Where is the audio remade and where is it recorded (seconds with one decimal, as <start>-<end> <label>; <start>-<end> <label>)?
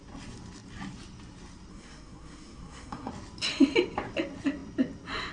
0.0-1.7 recorded; 1.7-3.1 remade; 3.1-5.3 recorded